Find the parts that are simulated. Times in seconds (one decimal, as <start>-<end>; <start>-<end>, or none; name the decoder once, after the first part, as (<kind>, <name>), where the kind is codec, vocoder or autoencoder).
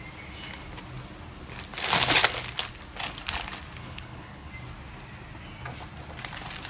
3.8-4.5 (codec, HILCodec)